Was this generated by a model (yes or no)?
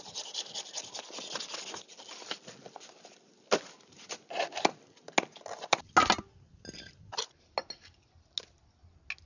no